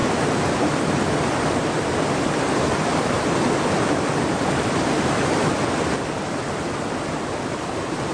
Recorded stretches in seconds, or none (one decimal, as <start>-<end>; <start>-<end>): 0.0-8.1